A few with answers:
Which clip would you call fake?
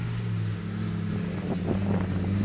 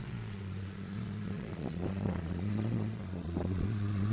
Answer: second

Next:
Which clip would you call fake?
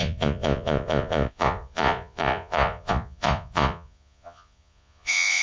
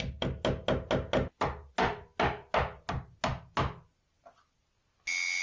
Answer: first